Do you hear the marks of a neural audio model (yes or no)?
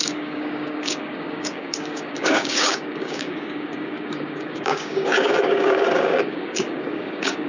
yes